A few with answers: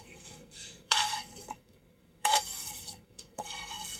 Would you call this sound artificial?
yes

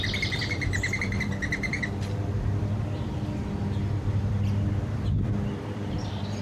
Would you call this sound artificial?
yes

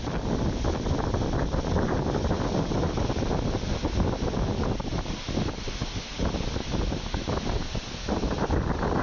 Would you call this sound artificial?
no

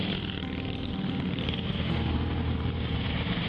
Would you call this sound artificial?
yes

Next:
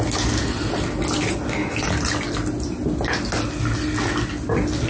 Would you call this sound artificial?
no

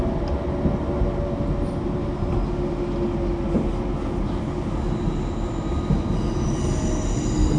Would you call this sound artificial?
no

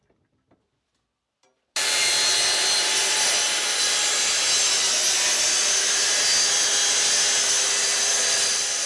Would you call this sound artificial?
no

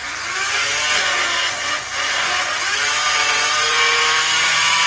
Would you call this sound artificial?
yes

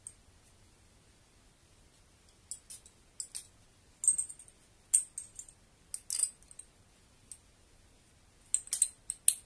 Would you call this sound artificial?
no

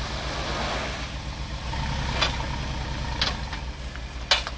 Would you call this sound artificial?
no